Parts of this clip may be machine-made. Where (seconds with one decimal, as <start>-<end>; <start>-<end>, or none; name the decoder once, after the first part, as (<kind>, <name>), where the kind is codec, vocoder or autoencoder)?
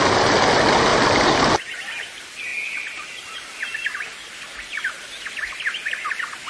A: 0.9-1.5 (vocoder, BigVGAN v2)